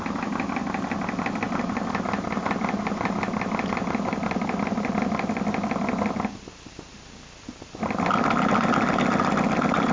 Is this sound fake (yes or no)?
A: no